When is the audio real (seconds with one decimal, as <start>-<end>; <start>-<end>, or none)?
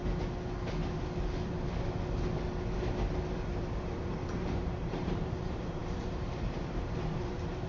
0.0-3.1